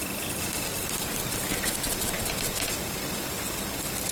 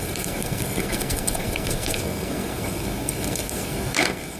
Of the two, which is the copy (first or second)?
second